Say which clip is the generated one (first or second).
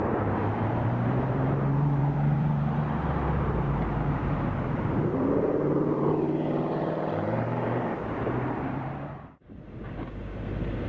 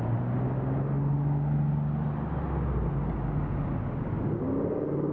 first